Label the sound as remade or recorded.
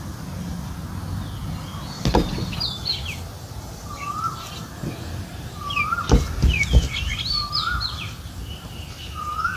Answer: recorded